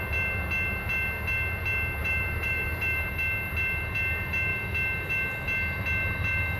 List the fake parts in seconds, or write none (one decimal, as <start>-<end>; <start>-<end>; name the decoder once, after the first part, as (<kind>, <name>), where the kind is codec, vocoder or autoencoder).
2.0-3.1 (vocoder, BigVGAN v2)